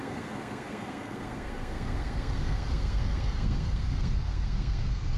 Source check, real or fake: fake